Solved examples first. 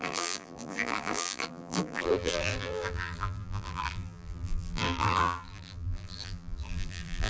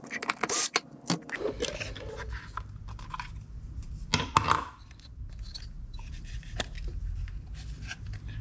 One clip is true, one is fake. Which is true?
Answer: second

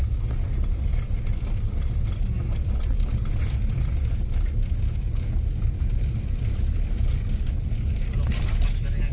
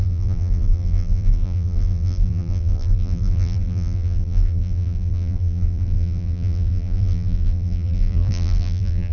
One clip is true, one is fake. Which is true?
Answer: first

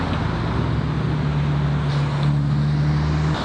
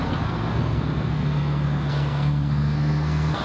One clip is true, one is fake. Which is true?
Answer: first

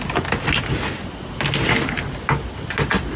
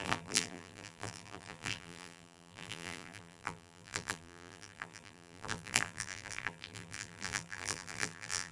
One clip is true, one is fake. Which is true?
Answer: first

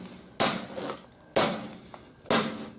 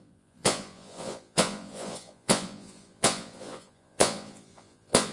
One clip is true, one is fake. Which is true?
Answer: first